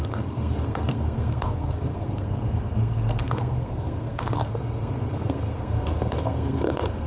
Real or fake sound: fake